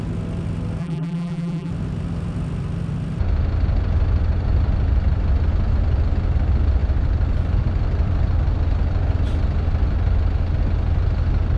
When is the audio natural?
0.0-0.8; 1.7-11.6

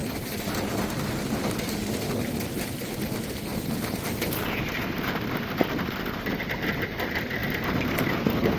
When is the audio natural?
0.7-3.5; 5.1-7.4

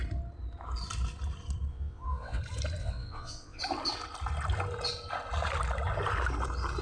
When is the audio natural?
0.0-1.7; 2.4-2.8; 3.6-6.8

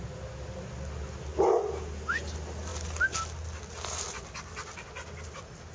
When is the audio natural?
0.0-5.7

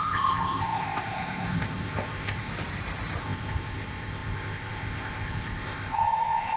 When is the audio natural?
2.5-3.2

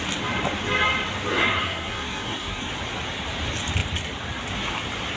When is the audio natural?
0.0-1.3; 2.7-5.2

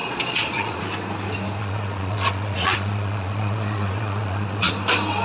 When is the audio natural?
0.8-1.6; 4.7-5.2